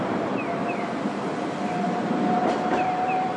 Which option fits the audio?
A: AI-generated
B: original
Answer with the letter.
A